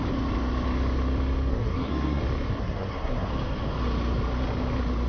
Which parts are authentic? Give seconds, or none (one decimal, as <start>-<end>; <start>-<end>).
0.0-1.5; 2.2-2.6; 3.3-5.1